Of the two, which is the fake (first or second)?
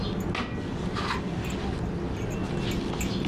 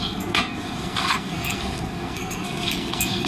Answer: second